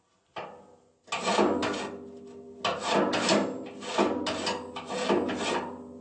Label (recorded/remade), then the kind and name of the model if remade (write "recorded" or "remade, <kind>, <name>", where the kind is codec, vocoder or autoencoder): recorded